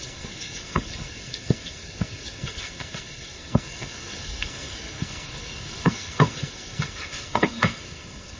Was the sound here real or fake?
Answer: fake